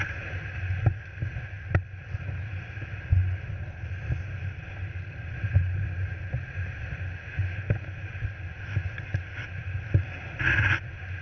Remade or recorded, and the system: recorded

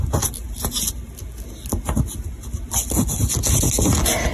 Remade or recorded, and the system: recorded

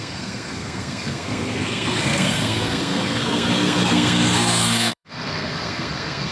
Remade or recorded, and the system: remade, codec, SNAC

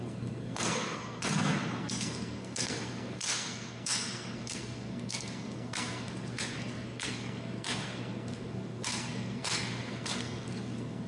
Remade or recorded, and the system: remade, codec, SNAC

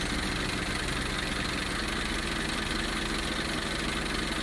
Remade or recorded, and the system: recorded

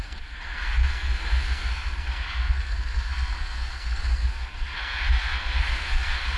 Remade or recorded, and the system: remade, codec, SNAC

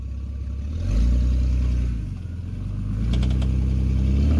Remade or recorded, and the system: recorded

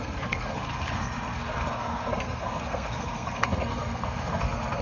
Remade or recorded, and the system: remade, codec, SNAC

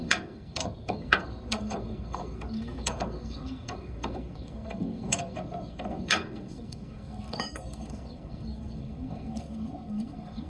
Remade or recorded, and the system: remade, codec, SNAC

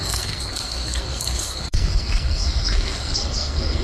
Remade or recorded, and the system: remade, codec, SNAC